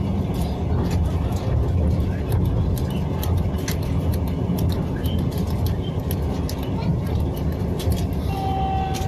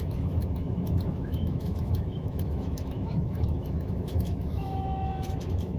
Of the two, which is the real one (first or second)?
first